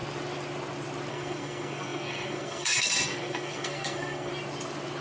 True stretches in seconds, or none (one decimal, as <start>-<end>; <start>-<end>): 0.0-1.1; 4.3-5.0

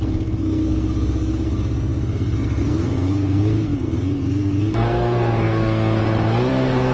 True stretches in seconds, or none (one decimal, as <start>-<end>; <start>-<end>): 6.0-6.5

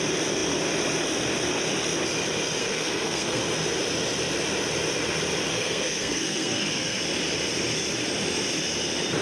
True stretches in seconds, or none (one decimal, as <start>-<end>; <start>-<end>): 0.0-2.6; 3.4-5.5; 7.0-9.2

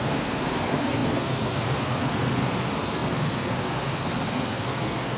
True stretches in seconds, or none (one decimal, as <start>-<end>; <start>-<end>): none

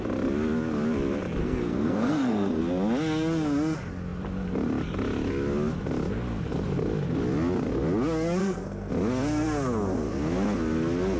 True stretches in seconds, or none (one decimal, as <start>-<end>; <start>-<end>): 0.0-1.4; 2.6-8.4; 8.9-11.2

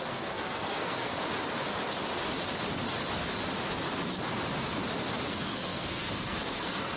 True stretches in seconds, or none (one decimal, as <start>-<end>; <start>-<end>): 1.1-5.3

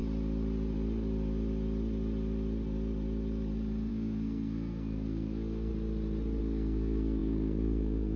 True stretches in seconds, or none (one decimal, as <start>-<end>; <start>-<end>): 0.0-3.9; 5.7-6.4